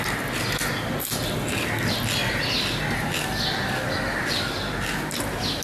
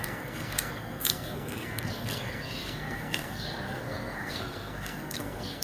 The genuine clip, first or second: first